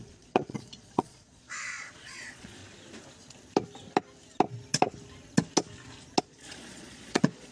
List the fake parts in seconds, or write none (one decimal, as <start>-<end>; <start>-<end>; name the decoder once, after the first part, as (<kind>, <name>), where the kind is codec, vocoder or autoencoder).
0.0-2.6 (vocoder, Vocos); 6.2-7.5